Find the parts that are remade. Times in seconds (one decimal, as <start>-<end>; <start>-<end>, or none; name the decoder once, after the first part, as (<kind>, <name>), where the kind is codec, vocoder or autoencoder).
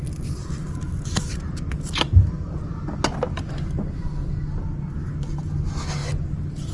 0.4-2.2 (vocoder, BigVGAN v2)